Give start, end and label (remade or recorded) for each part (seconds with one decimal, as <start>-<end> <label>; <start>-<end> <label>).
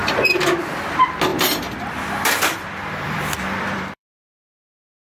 0.0-1.3 recorded; 1.3-4.1 remade; 4.1-5.1 recorded